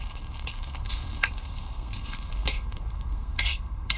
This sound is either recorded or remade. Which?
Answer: remade